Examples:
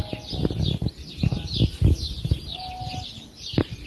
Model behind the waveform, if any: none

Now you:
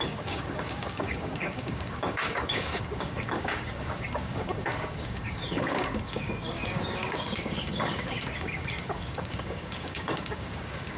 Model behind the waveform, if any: codec, DAC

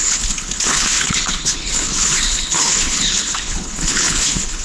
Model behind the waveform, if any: codec, HILCodec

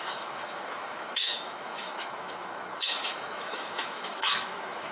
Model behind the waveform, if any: autoencoder, DAC-VAE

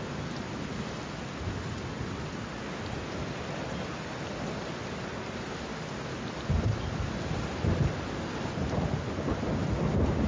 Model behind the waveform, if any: none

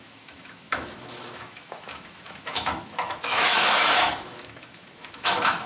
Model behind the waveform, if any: autoencoder, DAC-VAE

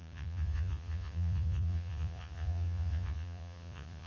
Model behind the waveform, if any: vocoder, Vocos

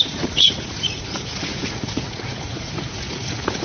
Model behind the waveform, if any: vocoder, Vocos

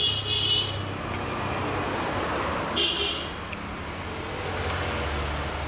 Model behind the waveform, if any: none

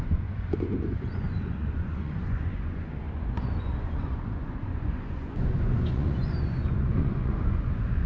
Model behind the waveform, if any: vocoder, Vocos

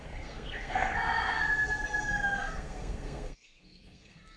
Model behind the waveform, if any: codec, SNAC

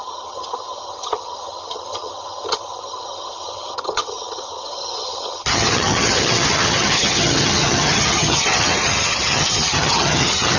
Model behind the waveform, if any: vocoder, HiFi-GAN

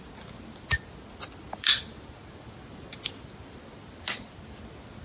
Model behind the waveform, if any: none